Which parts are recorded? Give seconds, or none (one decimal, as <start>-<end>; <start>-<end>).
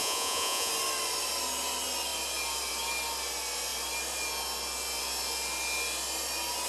0.7-6.7